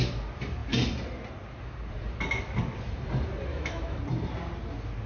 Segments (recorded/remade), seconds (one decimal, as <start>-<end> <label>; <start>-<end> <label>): 0.0-3.5 recorded; 3.5-4.0 remade; 4.0-5.1 recorded